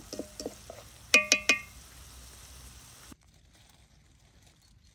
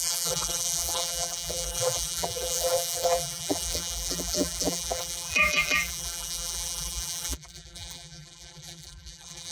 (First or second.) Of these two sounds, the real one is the first